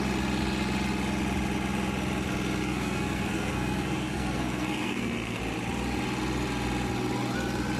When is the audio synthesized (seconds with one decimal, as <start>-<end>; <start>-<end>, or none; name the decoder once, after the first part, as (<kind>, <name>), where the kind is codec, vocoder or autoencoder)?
2.6-5.4 (codec, SNAC)